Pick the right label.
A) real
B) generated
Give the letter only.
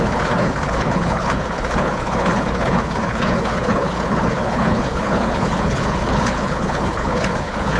B